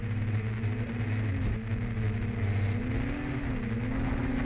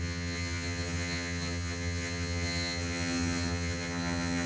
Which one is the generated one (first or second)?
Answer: second